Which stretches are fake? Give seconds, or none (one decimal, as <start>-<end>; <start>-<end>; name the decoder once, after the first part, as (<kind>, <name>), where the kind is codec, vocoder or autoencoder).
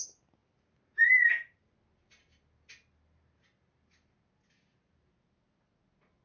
none